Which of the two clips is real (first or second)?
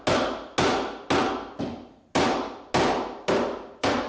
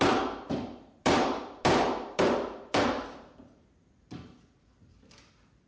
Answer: first